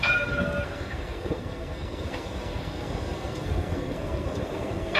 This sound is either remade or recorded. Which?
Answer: remade